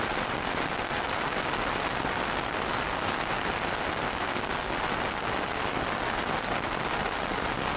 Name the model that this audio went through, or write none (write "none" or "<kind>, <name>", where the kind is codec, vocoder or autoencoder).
none